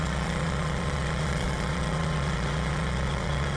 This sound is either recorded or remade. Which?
remade